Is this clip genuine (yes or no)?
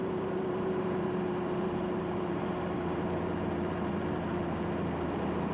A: no